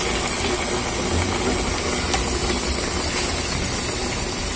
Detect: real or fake real